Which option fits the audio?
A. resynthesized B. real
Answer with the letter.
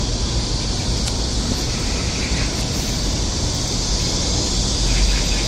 B